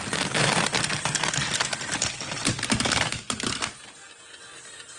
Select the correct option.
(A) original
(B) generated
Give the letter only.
A